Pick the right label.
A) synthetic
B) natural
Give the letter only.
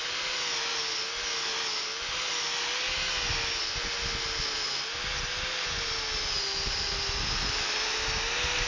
B